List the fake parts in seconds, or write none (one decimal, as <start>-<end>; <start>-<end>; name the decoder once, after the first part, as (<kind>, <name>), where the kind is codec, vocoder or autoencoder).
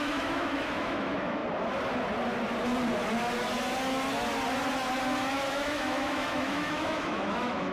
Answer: 0.0-1.4 (autoencoder, DAC-VAE); 5.5-7.7